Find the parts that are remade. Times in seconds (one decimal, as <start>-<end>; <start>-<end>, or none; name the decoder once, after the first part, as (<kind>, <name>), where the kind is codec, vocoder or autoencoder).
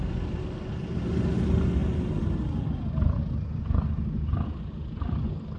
none